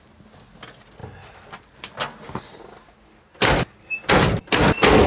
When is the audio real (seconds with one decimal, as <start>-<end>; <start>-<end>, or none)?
0.0-5.1